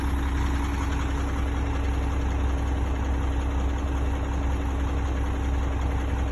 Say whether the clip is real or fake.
real